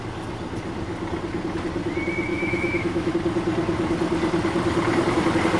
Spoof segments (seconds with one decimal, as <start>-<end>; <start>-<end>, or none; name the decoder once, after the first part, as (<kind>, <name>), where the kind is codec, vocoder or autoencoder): 2.3-3.1 (autoencoder, DAC-VAE)